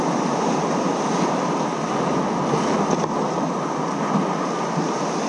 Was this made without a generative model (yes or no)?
yes